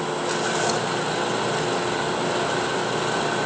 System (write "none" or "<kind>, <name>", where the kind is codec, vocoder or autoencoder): none